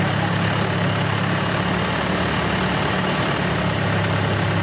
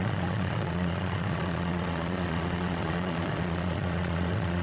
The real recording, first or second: first